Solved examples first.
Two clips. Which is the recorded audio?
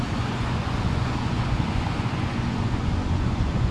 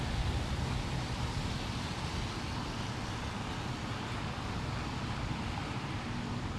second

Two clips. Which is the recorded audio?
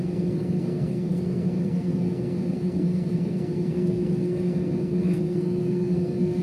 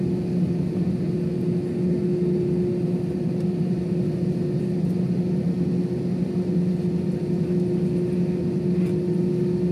second